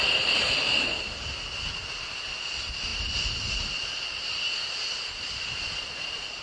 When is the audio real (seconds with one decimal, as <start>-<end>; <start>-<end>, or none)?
0.0-6.4